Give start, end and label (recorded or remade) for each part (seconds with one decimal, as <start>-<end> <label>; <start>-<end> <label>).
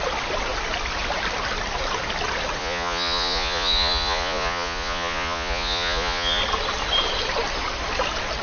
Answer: 0.0-2.6 recorded; 2.6-6.4 remade; 6.4-8.4 recorded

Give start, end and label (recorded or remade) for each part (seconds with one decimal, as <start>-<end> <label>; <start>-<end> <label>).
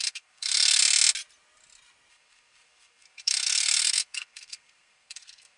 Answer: 0.0-0.8 remade; 0.8-2.1 recorded; 2.1-5.6 remade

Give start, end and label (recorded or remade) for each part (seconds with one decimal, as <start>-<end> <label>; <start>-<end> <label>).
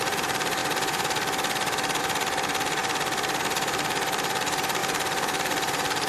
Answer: 0.0-0.6 remade; 0.6-2.0 recorded; 2.0-2.8 remade; 2.8-3.4 recorded; 3.4-6.1 remade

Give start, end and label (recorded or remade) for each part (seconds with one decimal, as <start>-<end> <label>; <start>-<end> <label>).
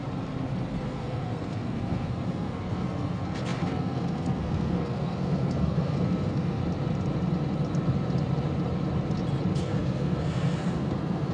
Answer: 0.0-0.7 recorded; 0.7-6.6 remade; 6.6-9.6 recorded; 9.6-11.3 remade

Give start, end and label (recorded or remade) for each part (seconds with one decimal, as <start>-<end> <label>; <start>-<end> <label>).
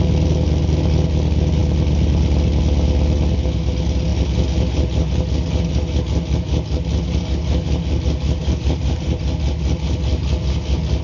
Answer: 0.0-8.4 recorded; 8.4-9.2 remade; 9.2-11.0 recorded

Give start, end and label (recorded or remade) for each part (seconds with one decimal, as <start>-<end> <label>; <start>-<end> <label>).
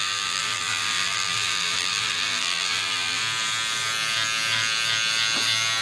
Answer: 0.0-3.2 remade; 3.2-5.8 recorded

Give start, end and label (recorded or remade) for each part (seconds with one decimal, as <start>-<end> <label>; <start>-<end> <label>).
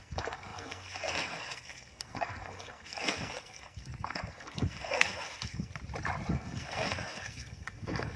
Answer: 0.0-5.7 remade; 5.7-6.3 recorded; 6.3-8.2 remade